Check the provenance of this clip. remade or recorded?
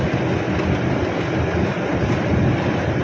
recorded